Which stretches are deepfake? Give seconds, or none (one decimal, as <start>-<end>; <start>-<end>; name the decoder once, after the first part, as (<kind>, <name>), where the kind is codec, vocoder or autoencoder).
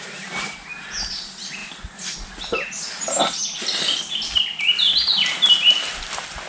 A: none